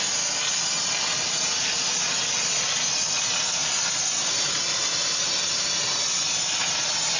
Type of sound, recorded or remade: recorded